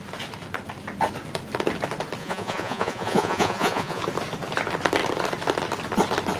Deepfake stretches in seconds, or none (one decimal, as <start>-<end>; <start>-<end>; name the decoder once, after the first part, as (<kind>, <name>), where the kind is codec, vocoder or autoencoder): 2.2-4.0 (vocoder, Vocos)